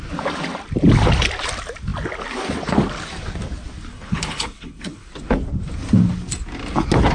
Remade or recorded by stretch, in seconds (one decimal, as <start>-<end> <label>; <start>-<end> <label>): 0.0-3.9 recorded; 3.9-5.1 remade; 5.1-7.1 recorded

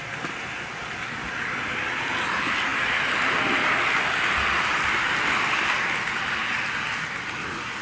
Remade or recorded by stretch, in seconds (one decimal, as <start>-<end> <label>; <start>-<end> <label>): 0.0-7.8 recorded

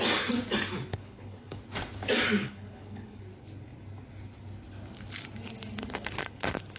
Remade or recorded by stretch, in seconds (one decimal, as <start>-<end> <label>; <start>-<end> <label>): 0.0-0.9 recorded; 0.9-1.6 remade; 1.6-2.4 recorded; 2.4-3.2 remade; 3.2-6.8 recorded

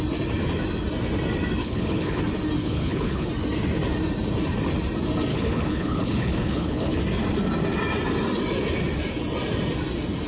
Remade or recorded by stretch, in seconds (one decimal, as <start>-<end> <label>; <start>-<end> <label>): 0.0-1.6 recorded; 1.6-2.2 remade; 2.2-2.6 recorded; 2.6-3.3 remade; 3.3-5.3 recorded; 5.3-7.0 remade; 7.0-10.3 recorded

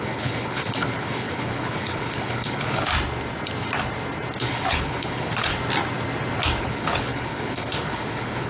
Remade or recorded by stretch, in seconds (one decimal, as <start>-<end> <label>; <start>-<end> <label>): 0.0-2.9 remade; 2.9-4.4 recorded; 4.4-5.5 remade; 5.5-6.6 recorded; 6.6-8.5 remade